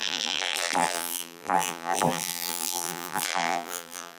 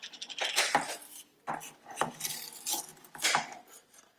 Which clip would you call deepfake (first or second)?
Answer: first